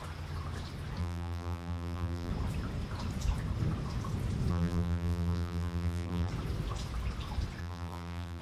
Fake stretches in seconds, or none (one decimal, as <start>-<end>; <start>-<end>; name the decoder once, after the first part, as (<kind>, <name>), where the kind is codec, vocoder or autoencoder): 1.0-2.3 (vocoder, BigVGAN v2); 4.5-6.3; 7.6-8.4